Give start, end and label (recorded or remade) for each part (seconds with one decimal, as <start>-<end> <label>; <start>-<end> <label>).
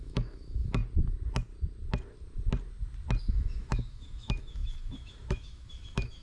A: 0.0-0.8 remade; 0.8-3.2 recorded; 3.2-6.2 remade